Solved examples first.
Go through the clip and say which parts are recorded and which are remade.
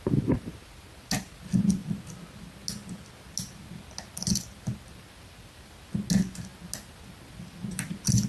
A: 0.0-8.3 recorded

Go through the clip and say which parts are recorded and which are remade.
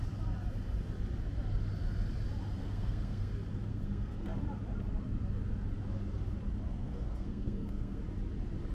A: 0.0-2.6 recorded; 2.6-3.3 remade; 3.3-3.7 recorded; 3.7-4.4 remade; 4.4-6.7 recorded; 6.7-8.0 remade; 8.0-8.7 recorded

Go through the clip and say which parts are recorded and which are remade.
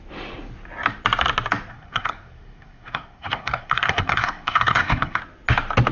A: 0.0-1.7 recorded; 1.7-5.2 remade; 5.2-5.9 recorded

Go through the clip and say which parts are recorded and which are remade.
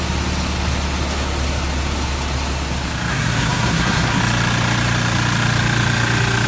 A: 0.0-3.1 recorded; 3.1-4.2 remade; 4.2-6.5 recorded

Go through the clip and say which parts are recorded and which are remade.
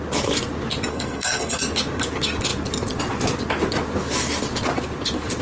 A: 0.0-0.9 recorded; 0.9-1.6 remade; 1.6-5.4 recorded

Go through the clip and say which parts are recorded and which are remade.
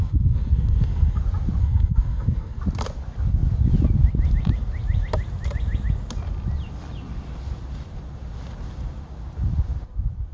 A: 0.0-1.2 remade; 1.2-1.6 recorded; 1.6-2.6 remade; 2.6-10.3 recorded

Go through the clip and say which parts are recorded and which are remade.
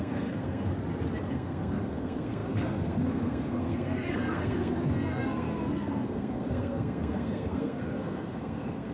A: 0.0-0.7 remade; 0.7-1.3 recorded; 1.3-8.9 remade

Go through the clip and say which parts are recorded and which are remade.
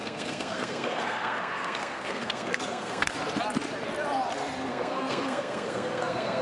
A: 0.0-3.1 remade; 3.1-4.7 recorded; 4.7-6.4 remade